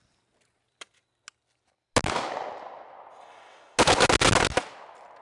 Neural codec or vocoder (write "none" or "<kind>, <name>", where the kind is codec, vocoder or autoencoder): none